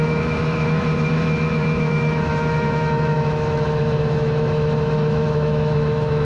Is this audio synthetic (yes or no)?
yes